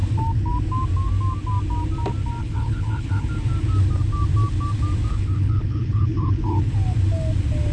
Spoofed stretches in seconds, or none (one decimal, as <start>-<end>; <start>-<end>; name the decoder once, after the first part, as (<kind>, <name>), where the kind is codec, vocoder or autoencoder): 2.4-3.3 (codec, HILCodec); 5.1-6.7